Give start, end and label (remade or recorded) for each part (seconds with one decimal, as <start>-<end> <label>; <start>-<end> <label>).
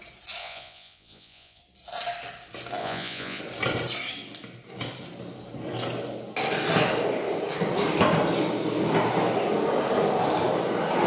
0.0-0.4 recorded; 0.4-1.6 remade; 1.6-2.8 recorded; 2.8-3.4 remade; 3.4-11.1 recorded